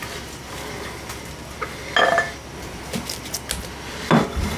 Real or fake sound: real